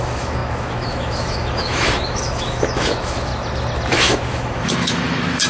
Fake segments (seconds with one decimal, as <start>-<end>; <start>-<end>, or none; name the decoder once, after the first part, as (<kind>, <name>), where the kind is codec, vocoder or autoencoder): 0.0-3.3 (autoencoder, DAC-VAE); 3.9-5.5